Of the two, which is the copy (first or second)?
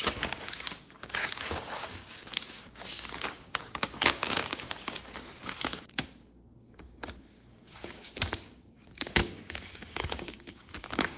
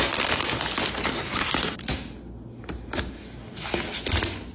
first